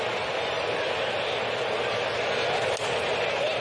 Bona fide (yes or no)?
yes